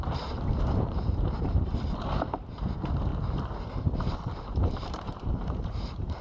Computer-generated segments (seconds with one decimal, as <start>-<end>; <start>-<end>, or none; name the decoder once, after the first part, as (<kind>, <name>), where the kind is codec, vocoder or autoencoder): 0.0-3.1 (vocoder, BigVGAN v2); 4.0-6.2

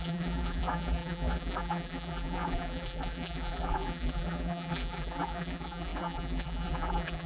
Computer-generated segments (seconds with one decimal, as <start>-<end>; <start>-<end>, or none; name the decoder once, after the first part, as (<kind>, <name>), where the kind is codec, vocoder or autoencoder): 0.0-7.3 (vocoder, BigVGAN v2)

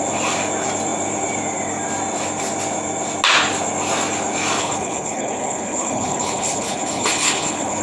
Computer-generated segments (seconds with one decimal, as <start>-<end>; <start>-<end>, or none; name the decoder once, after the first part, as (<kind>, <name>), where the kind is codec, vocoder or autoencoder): 4.6-7.8 (codec, HILCodec)